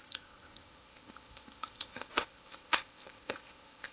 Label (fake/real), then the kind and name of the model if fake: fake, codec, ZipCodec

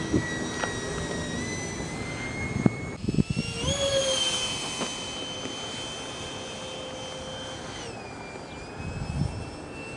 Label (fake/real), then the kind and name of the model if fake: real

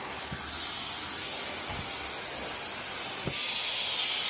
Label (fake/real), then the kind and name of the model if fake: real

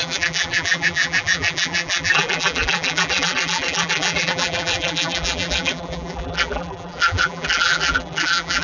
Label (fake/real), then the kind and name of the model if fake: fake, vocoder, BigVGAN v2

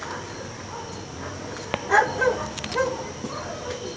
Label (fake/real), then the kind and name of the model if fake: real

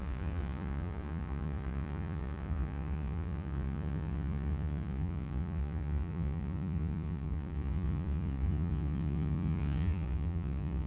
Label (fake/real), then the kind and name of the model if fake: fake, vocoder, Vocos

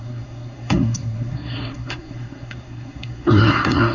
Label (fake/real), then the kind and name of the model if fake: fake, codec, SNAC